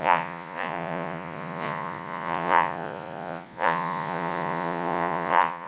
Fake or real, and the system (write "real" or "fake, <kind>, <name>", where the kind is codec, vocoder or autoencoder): fake, vocoder, Vocos